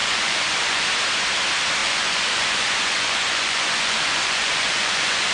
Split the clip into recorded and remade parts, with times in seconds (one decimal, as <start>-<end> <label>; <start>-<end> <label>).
0.0-0.9 remade; 0.9-1.8 recorded; 1.8-5.3 remade